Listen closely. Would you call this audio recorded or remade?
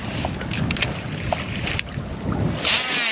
recorded